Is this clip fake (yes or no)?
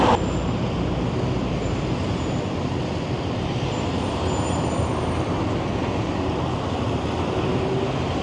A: no